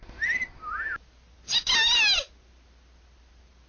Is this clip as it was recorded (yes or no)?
yes